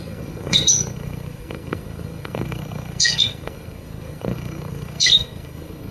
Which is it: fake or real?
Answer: fake